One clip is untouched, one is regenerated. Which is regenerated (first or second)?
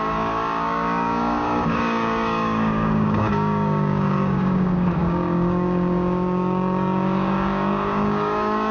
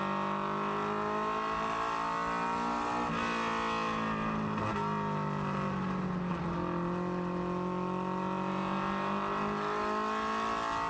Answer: first